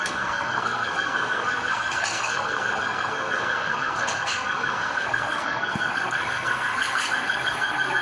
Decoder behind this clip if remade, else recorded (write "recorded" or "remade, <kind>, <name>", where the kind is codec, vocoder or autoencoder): remade, codec, SNAC